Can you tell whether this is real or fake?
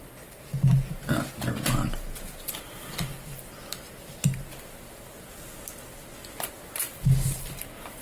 real